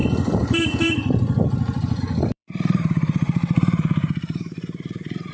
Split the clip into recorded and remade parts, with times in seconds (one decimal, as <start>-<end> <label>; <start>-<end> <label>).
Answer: 0.0-5.3 remade

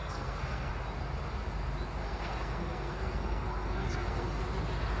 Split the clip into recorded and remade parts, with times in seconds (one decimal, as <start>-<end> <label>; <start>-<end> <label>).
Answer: 0.0-0.7 remade; 0.7-2.0 recorded; 2.0-4.4 remade; 4.4-5.0 recorded

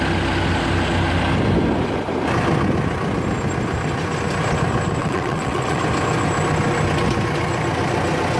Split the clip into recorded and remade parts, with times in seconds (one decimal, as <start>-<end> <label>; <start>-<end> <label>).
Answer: 0.0-5.0 recorded; 5.0-5.8 remade; 5.8-8.4 recorded

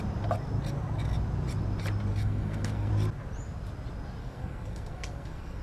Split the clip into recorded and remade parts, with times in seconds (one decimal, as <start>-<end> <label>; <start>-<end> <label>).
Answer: 0.0-2.1 recorded; 2.1-2.9 remade; 2.9-4.2 recorded; 4.2-5.6 remade

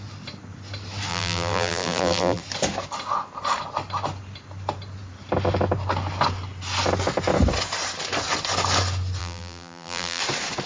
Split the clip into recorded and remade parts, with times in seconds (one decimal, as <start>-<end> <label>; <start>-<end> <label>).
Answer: 0.0-1.1 recorded; 1.1-2.4 remade; 2.4-9.2 recorded; 9.2-10.2 remade; 10.2-10.7 recorded

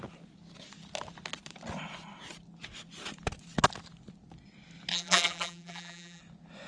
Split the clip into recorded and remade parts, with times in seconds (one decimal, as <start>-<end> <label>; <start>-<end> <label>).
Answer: 0.0-4.9 recorded; 4.9-6.2 remade; 6.2-6.7 recorded

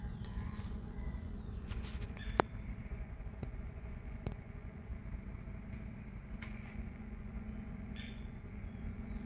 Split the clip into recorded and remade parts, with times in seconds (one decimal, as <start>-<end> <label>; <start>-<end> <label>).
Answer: 0.0-2.2 remade; 2.2-2.9 recorded; 2.9-4.9 remade; 4.9-6.4 recorded; 6.4-9.3 remade